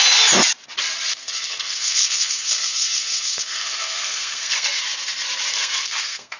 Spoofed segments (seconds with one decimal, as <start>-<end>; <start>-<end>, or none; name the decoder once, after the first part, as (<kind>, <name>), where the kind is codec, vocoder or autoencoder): 1.1-4.8 (codec, SNAC); 5.5-6.4